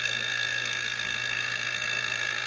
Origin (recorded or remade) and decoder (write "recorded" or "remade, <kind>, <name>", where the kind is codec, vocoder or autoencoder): remade, codec, SNAC